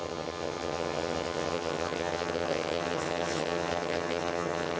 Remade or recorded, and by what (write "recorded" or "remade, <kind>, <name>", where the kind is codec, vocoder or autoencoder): remade, vocoder, HiFi-GAN